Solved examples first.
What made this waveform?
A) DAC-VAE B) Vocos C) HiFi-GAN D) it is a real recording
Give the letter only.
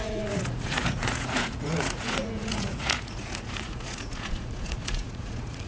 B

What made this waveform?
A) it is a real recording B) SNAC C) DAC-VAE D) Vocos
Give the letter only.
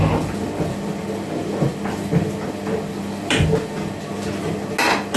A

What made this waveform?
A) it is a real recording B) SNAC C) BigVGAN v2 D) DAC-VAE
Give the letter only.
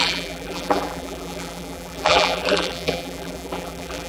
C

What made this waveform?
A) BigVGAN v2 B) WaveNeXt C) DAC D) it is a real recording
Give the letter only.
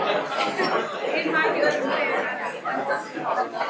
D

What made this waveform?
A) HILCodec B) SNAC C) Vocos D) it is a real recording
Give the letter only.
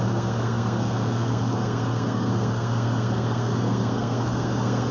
B